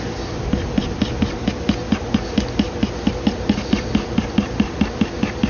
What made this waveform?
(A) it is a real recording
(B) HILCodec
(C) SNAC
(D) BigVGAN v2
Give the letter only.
A